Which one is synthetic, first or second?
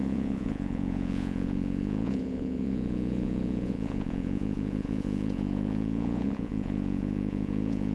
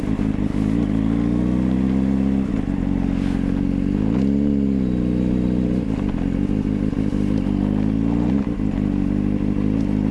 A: first